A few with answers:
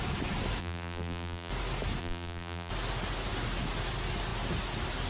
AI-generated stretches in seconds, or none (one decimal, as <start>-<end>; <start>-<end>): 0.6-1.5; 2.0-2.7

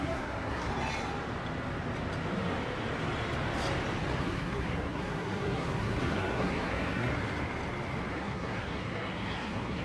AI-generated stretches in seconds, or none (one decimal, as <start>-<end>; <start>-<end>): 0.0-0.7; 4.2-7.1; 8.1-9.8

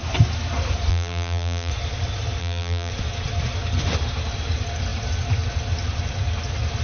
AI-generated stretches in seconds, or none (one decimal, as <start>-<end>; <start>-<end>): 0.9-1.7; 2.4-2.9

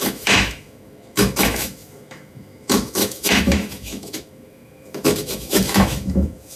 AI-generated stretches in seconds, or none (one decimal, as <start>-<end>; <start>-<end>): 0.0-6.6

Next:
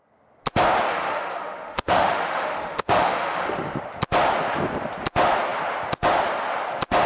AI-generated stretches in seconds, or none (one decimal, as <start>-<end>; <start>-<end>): 0.9-3.8

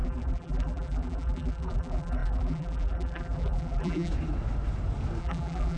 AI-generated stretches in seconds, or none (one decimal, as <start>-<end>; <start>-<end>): 0.0-4.1; 5.2-5.8

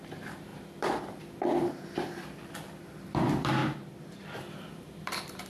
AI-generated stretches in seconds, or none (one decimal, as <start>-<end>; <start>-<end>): 0.0-3.6; 4.4-5.5

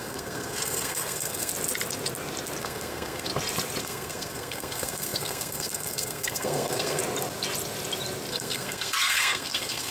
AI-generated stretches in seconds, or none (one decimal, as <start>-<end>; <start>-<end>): 0.0-1.5; 2.6-3.3; 3.8-7.0; 8.3-9.9